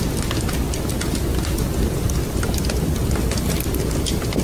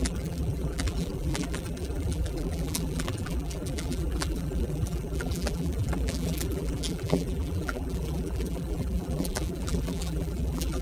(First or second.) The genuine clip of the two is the first